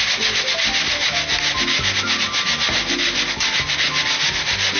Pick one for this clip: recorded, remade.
recorded